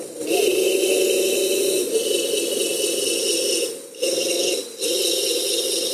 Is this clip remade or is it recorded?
recorded